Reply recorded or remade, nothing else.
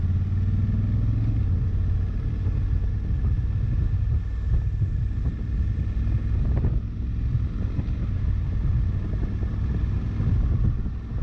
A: recorded